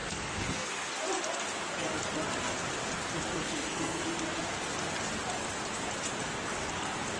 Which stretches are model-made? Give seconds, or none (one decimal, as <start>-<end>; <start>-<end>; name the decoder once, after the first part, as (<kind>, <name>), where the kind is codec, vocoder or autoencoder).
0.0-0.9 (codec, SNAC); 3.3-4.0